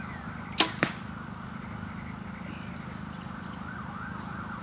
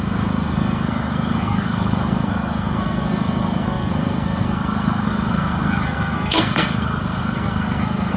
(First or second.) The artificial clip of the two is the second